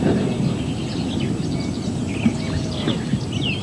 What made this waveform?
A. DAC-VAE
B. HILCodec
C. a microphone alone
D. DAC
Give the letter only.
C